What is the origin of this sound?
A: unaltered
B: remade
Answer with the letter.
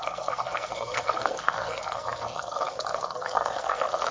B